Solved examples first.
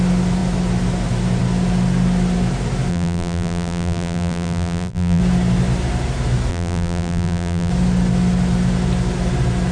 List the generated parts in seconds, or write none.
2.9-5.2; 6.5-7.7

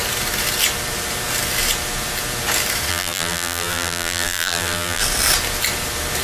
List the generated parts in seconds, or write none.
2.9-5.0

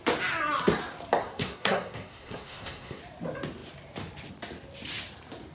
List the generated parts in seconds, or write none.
1.2-3.0

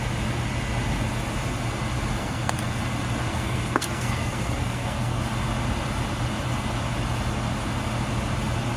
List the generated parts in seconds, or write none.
2.2-2.8; 3.3-5.2

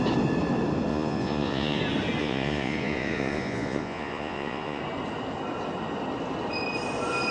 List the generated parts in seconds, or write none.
0.9-1.8; 2.2-4.8

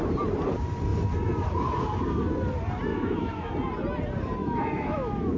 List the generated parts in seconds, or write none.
2.9-3.5; 4.4-5.4

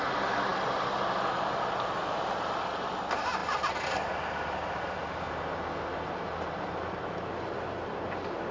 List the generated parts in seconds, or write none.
none